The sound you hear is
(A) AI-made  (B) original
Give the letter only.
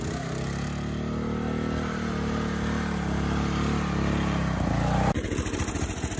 B